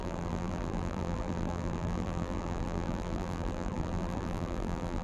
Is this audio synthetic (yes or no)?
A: yes